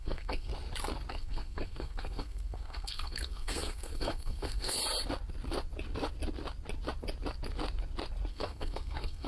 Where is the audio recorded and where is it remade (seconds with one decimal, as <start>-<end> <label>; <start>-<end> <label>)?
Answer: 0.0-0.5 remade; 0.5-1.1 recorded; 1.1-4.8 remade; 4.8-8.3 recorded; 8.3-9.3 remade